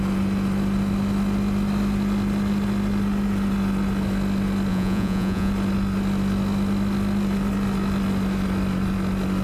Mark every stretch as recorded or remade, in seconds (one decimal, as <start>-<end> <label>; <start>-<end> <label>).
0.0-4.7 recorded; 4.7-5.5 remade; 5.5-9.4 recorded